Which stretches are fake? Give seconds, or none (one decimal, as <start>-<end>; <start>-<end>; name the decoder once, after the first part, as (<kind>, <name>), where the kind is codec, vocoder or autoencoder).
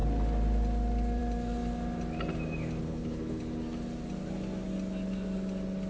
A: 2.8-3.4 (codec, HILCodec)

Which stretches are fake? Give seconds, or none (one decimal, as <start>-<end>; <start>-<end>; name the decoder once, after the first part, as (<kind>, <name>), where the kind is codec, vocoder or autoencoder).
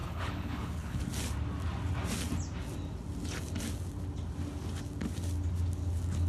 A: 0.0-1.0 (codec, HILCodec)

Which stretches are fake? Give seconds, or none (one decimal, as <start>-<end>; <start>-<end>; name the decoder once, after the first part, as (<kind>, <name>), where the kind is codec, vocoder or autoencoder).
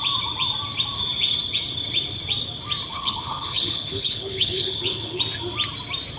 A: 2.9-5.2 (codec, HILCodec)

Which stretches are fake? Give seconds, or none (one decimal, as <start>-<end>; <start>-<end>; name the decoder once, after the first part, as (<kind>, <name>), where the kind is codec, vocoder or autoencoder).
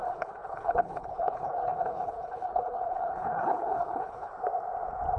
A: 0.0-4.3 (codec, HILCodec)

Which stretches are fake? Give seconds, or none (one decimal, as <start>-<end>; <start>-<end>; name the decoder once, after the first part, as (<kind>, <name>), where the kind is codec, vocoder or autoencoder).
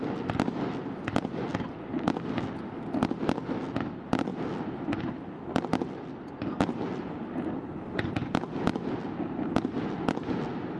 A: none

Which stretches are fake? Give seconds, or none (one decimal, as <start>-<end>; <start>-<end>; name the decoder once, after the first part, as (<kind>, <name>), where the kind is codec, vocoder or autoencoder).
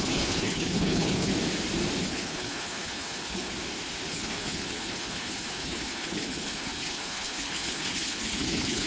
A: 0.0-1.3 (codec, HILCodec); 2.0-3.5; 4.1-8.9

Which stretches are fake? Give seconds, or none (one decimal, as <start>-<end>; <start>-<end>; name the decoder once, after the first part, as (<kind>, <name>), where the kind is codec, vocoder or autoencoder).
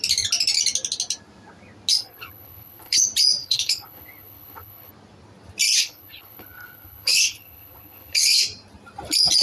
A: 1.9-3.0 (codec, HILCodec); 3.4-4.9; 5.8-8.4